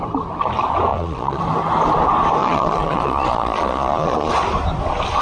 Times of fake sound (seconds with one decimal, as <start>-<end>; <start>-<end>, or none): 0.9-1.4; 2.4-4.3